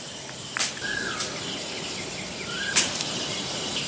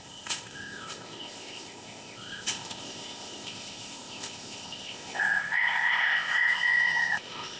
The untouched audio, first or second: first